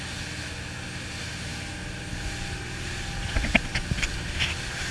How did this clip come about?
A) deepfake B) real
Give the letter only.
B